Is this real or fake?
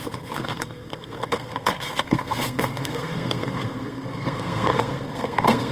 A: fake